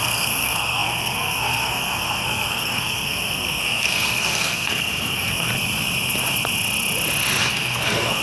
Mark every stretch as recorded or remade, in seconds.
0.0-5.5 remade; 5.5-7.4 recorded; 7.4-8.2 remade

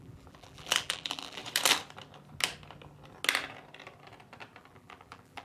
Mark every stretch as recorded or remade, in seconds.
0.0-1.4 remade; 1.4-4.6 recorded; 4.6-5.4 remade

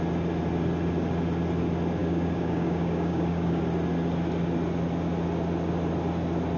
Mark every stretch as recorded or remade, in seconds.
0.0-2.0 recorded; 2.0-3.6 remade; 3.6-6.6 recorded

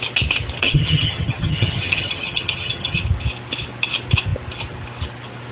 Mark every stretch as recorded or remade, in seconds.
0.0-0.6 recorded; 0.6-3.0 remade; 3.0-5.5 recorded

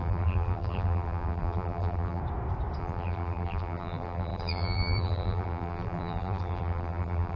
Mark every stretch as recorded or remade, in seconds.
0.0-2.2 remade; 2.2-2.8 recorded; 2.8-7.4 remade

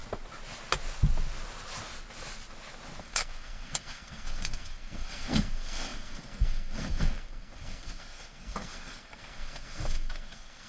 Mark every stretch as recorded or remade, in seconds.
0.0-3.0 recorded; 3.0-10.7 remade